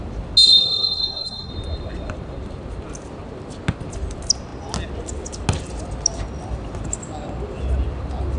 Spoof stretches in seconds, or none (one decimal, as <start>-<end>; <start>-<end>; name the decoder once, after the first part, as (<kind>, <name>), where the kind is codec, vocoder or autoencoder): 0.6-1.5 (codec, SNAC)